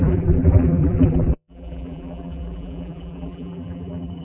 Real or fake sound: fake